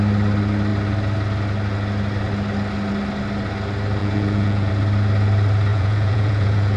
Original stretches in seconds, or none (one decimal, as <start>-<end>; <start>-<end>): 0.0-4.0; 4.7-5.7